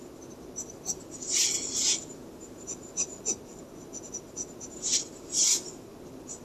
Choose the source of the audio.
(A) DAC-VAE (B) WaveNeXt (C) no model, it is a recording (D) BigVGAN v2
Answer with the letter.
C